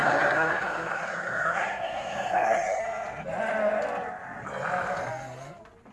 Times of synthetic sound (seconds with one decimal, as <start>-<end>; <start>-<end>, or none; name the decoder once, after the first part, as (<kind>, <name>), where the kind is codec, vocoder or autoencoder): 0.0-2.8 (codec, SNAC)